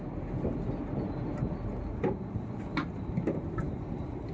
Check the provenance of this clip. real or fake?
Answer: real